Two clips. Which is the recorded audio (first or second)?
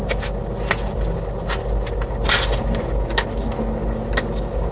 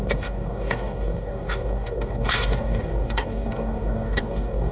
first